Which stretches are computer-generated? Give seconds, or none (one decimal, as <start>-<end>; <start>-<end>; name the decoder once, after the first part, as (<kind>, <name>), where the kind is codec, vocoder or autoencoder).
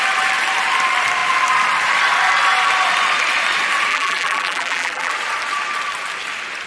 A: 3.9-5.1 (vocoder, BigVGAN v2)